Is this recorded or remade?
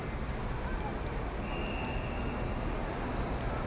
recorded